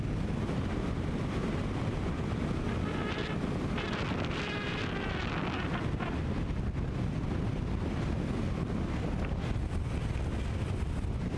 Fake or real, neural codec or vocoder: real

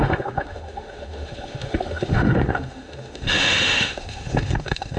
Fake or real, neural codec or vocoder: fake, autoencoder, DAC-VAE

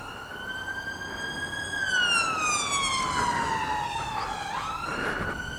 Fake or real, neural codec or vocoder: real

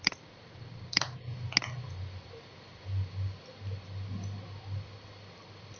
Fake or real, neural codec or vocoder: real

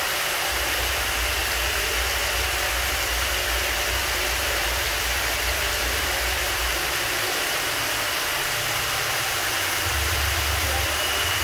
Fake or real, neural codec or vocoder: real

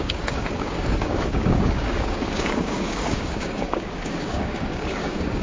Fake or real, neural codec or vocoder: fake, codec, DAC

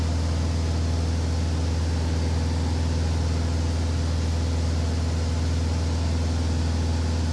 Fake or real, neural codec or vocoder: real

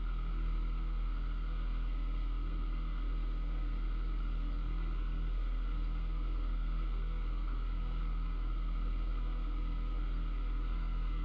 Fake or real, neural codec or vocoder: fake, codec, SNAC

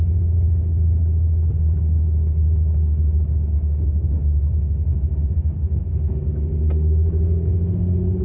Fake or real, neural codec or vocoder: fake, codec, DAC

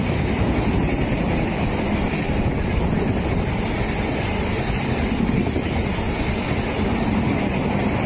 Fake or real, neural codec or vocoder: real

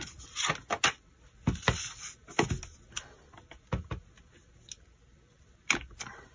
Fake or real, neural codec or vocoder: real